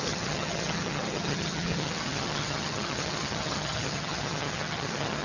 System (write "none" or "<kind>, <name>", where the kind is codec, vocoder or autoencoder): vocoder, HiFi-GAN